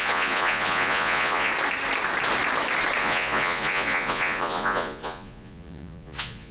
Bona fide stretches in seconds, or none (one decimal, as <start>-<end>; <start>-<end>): 1.5-3.0